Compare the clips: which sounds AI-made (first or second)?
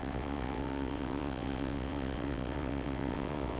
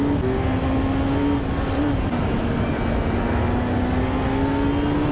first